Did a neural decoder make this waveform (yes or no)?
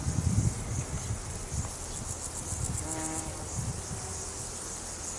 no